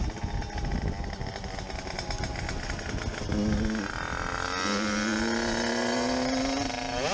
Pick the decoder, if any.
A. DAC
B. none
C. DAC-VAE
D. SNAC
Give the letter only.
B